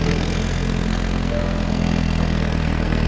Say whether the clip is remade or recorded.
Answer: remade